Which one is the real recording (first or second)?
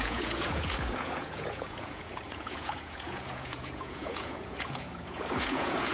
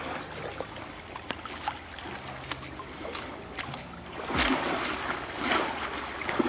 second